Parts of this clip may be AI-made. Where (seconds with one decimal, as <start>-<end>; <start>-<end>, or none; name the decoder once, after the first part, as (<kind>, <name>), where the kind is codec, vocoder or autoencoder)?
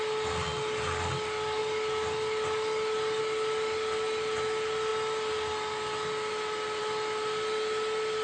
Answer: none